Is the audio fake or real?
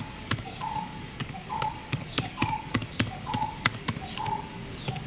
fake